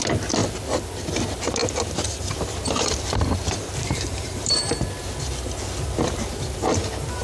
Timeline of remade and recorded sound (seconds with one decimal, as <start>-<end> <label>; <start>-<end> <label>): 0.0-1.6 recorded; 1.6-4.6 remade; 4.6-7.2 recorded